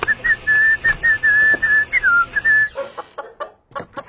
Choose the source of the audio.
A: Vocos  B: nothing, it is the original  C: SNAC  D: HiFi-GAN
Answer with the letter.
B